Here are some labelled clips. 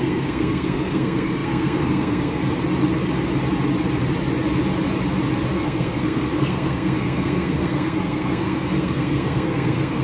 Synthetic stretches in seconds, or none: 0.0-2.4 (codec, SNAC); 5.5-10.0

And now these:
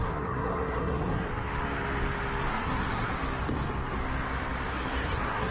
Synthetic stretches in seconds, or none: 0.0-1.3 (codec, SNAC); 2.5-3.2; 4.7-5.5